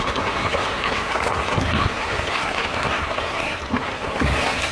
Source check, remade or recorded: remade